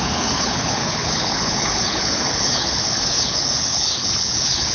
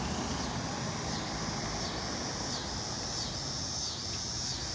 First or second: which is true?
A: second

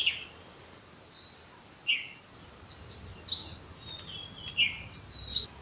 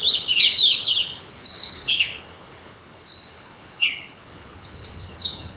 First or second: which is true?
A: first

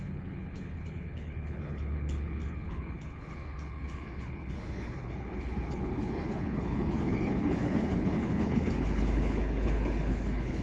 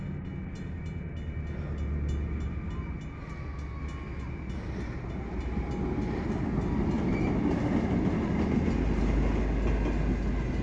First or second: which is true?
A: second